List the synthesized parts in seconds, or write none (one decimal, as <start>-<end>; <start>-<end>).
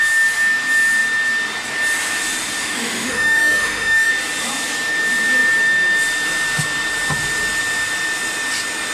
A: 2.6-4.1